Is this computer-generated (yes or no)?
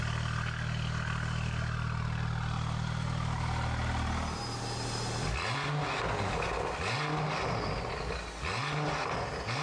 no